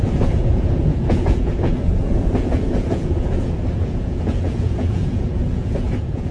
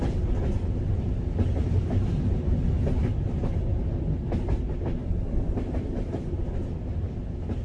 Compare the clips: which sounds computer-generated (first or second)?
first